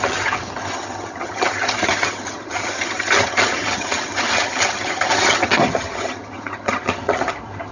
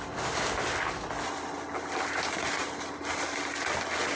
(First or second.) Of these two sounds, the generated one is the first